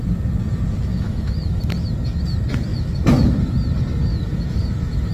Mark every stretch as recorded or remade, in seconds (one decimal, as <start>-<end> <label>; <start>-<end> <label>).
0.0-0.9 recorded; 0.9-1.6 remade; 1.6-2.7 recorded; 2.7-3.4 remade; 3.4-4.1 recorded; 4.1-5.1 remade

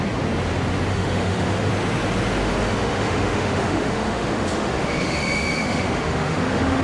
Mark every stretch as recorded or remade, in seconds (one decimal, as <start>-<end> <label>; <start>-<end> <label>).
0.0-0.9 recorded; 0.9-1.7 remade; 1.7-2.4 recorded; 2.4-6.8 remade

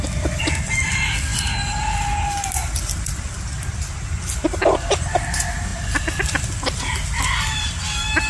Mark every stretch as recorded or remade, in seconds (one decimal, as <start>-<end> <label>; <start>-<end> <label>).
0.0-8.3 recorded

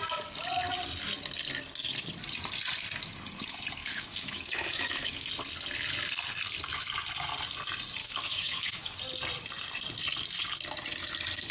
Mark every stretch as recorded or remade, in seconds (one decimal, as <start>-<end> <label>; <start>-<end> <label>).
0.0-3.8 recorded; 3.8-5.3 remade; 5.3-8.0 recorded; 8.0-9.0 remade; 9.0-11.5 recorded